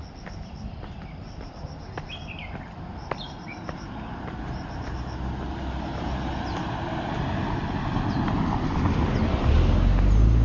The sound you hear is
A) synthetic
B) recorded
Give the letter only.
B